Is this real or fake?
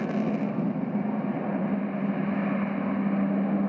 real